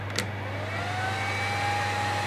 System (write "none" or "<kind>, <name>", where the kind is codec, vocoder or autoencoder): none